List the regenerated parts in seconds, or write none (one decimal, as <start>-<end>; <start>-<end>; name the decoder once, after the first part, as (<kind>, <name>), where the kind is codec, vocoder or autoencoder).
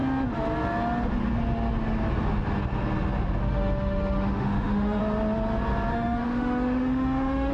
3.4-5.0 (autoencoder, DAC-VAE); 5.9-7.5